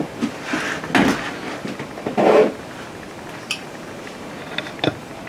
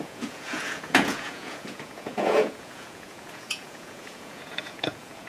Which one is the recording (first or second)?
first